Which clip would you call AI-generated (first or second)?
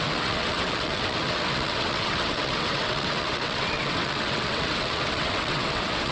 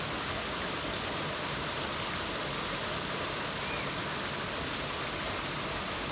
first